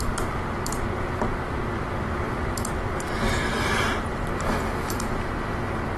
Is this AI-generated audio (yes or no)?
yes